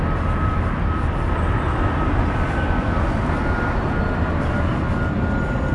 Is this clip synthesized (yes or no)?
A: no